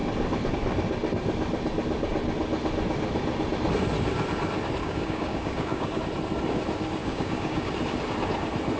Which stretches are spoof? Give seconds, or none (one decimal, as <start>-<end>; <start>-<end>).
4.8-6.0; 7.0-7.7